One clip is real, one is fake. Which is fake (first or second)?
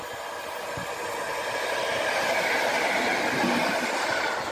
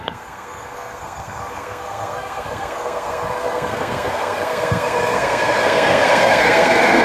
second